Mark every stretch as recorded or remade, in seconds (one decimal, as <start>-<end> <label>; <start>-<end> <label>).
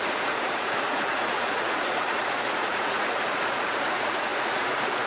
0.0-5.1 remade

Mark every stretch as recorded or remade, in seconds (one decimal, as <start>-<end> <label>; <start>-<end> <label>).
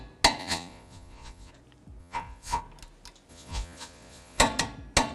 0.0-0.4 recorded; 0.4-1.5 remade; 1.5-2.0 recorded; 2.0-2.6 remade; 2.6-3.3 recorded; 3.3-4.4 remade; 4.4-5.1 recorded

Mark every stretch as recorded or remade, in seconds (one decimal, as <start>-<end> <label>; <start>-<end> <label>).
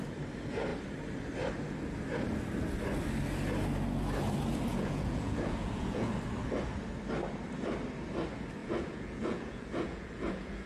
0.0-4.7 recorded; 4.7-6.1 remade; 6.1-8.6 recorded; 8.6-10.7 remade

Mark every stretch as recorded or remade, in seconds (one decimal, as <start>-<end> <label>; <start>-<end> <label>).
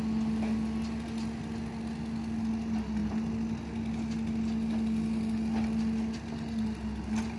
0.0-7.4 recorded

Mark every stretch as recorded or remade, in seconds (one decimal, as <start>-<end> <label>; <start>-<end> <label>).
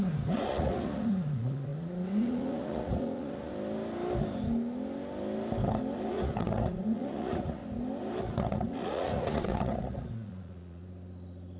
0.0-3.5 remade; 3.5-6.1 recorded; 6.1-7.6 remade; 7.6-8.2 recorded; 8.2-10.8 remade; 10.8-11.6 recorded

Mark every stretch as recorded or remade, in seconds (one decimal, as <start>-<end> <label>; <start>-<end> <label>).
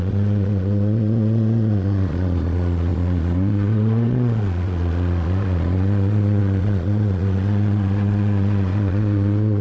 0.0-9.6 remade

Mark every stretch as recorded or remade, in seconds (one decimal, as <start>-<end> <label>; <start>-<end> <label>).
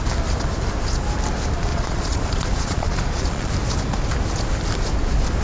0.0-1.7 recorded; 1.7-3.5 remade; 3.5-5.4 recorded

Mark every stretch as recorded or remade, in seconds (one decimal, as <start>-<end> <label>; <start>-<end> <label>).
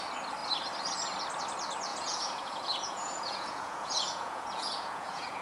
0.0-1.9 recorded; 1.9-5.4 remade